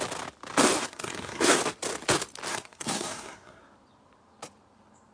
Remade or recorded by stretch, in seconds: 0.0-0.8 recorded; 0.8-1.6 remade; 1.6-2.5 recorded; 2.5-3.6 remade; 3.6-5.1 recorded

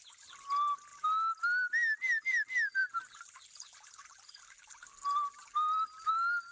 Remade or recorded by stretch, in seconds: 0.0-6.5 recorded

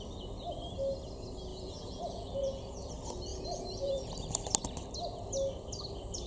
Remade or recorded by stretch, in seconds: 0.0-1.5 recorded; 1.5-2.9 remade; 2.9-3.3 recorded; 3.3-4.1 remade; 4.1-6.3 recorded